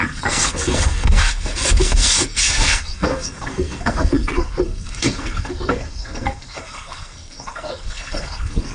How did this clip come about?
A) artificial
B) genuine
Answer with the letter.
A